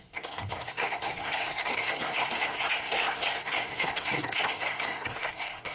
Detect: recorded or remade remade